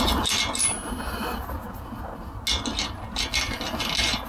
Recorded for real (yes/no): yes